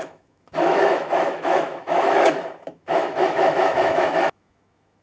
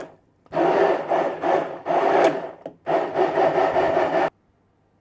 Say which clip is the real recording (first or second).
second